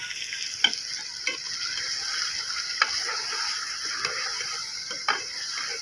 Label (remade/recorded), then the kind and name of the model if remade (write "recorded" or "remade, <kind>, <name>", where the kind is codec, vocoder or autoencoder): recorded